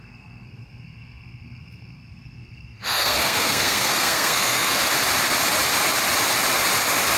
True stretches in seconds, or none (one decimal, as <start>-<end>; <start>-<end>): 4.8-7.2